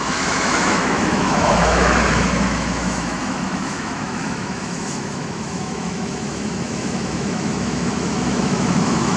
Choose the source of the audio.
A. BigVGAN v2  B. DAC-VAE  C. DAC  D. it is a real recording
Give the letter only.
B